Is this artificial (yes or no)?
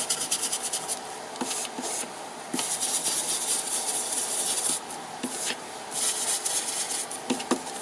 no